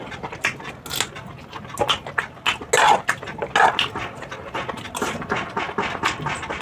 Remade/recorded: recorded